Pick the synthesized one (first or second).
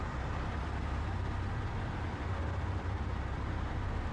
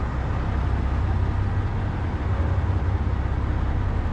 first